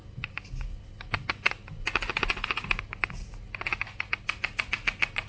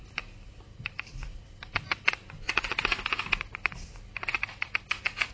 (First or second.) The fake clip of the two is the second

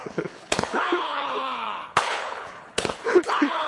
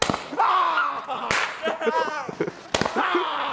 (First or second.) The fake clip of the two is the first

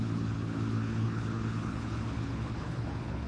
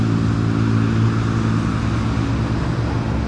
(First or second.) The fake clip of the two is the first